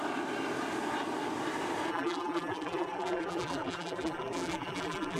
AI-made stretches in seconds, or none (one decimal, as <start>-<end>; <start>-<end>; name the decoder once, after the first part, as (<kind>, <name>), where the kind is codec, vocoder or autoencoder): 1.9-5.2 (vocoder, BigVGAN v2)